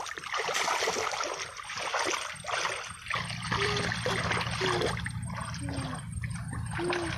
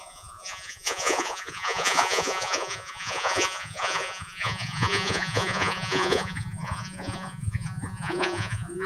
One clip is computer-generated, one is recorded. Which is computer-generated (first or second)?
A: second